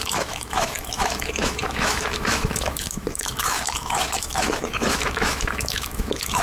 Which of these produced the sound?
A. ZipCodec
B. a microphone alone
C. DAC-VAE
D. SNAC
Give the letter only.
C